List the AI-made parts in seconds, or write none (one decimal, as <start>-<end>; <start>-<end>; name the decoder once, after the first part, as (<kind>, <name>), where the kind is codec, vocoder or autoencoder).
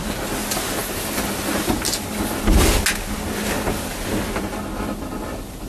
none